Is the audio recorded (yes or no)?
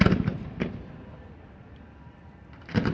yes